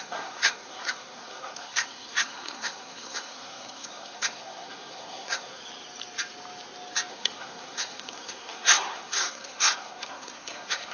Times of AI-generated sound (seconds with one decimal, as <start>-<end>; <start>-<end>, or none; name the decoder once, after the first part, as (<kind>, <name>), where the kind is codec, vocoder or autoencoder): 0.0-5.6 (codec, SNAC); 7.1-10.9